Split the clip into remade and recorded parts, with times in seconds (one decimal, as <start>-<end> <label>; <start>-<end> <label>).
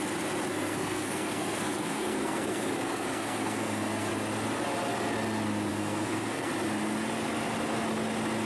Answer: 0.0-0.5 recorded; 0.5-4.1 remade; 4.1-5.7 recorded; 5.7-6.5 remade; 6.5-8.5 recorded